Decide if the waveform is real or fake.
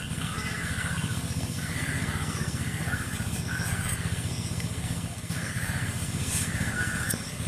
fake